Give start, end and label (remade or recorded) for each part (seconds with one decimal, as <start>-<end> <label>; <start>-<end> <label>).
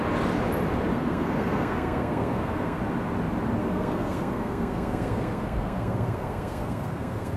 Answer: 0.0-0.9 recorded; 0.9-2.8 remade; 2.8-3.6 recorded; 3.6-7.4 remade